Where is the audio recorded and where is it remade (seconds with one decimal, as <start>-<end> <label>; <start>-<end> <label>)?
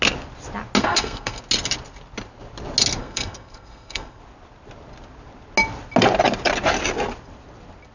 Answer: 0.0-0.8 recorded; 0.8-1.4 remade; 1.4-3.0 recorded; 3.0-4.2 remade; 4.2-7.9 recorded